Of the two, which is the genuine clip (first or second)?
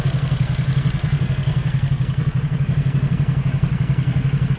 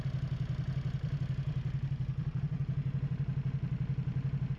second